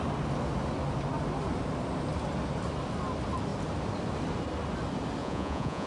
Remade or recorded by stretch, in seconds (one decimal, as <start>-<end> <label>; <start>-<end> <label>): 0.0-5.2 recorded; 5.2-5.9 remade